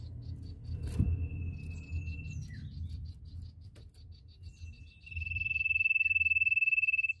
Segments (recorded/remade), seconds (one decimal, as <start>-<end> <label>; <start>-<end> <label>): 0.0-7.2 recorded